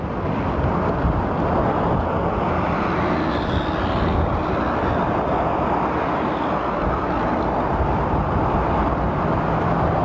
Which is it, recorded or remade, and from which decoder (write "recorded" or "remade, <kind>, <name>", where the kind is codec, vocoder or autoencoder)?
recorded